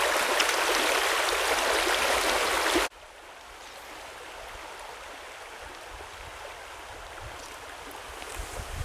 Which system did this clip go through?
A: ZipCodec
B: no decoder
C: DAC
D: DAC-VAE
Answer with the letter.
B